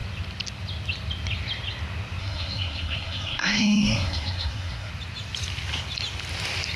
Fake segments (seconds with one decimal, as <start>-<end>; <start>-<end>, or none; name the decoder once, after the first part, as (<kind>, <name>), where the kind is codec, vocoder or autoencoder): 2.2-4.9 (codec, SNAC)